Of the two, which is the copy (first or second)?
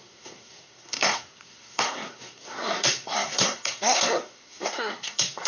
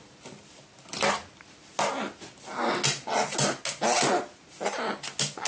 first